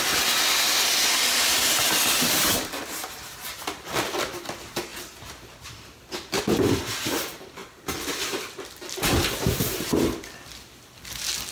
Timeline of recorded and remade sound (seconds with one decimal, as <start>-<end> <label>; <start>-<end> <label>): 0.0-4.9 remade; 4.9-6.4 recorded; 6.4-7.6 remade; 7.6-9.4 recorded; 9.4-11.5 remade